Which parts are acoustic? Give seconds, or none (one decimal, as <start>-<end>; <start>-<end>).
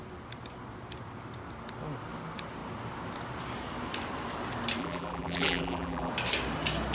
0.0-4.8; 6.1-6.9